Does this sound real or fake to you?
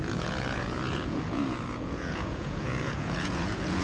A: fake